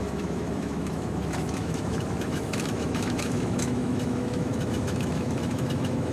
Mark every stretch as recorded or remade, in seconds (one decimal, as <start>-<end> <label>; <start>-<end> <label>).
0.0-6.1 remade